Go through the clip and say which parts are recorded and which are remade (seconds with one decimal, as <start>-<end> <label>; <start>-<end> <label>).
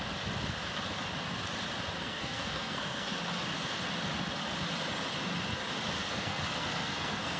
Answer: 0.0-2.0 recorded; 2.0-3.2 remade; 3.2-6.0 recorded; 6.0-7.4 remade